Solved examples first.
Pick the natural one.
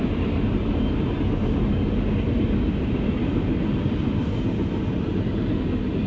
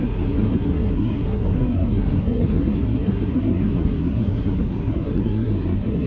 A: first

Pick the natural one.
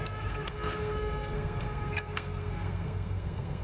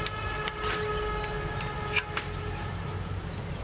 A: second